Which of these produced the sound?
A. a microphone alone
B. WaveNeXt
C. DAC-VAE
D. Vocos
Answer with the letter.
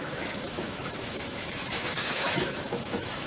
C